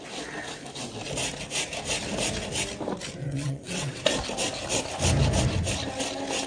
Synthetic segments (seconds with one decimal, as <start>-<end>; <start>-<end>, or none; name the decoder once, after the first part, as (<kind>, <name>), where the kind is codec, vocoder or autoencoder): 3.2-4.0 (vocoder, WaveNeXt)